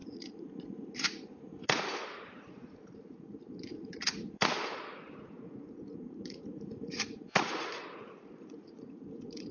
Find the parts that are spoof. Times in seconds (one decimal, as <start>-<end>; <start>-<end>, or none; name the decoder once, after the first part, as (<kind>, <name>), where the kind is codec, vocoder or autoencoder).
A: 0.0-9.5 (vocoder, Vocos)